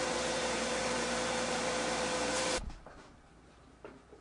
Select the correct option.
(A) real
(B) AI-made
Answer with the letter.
B